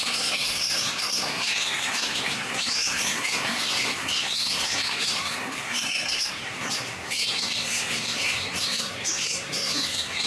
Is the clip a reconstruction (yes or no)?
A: yes